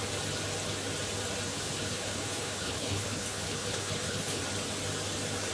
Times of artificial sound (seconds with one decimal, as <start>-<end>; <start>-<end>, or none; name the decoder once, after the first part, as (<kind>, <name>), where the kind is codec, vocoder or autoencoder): 1.5-4.4 (codec, HILCodec)